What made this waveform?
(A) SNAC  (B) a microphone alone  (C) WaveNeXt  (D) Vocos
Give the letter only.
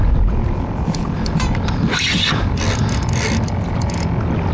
B